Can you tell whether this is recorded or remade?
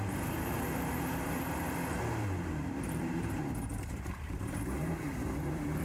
remade